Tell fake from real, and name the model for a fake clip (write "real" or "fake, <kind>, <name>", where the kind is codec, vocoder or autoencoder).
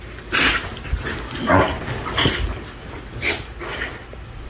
real